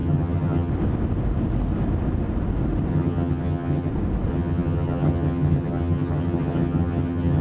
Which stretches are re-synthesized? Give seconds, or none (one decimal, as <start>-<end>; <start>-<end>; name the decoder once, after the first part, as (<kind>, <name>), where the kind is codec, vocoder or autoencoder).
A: 0.0-0.7 (vocoder, HiFi-GAN); 2.9-3.9; 4.3-7.4